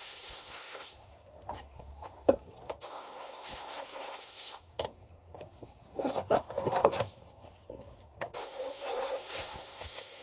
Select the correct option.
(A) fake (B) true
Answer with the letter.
A